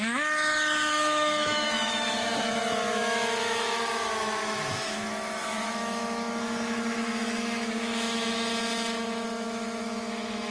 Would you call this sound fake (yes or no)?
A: yes